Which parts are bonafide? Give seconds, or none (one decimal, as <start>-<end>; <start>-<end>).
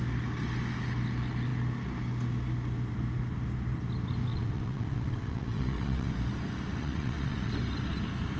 0.0-4.3; 6.1-6.8; 7.5-8.4